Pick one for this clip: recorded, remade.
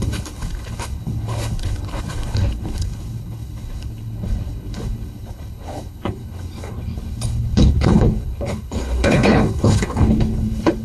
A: remade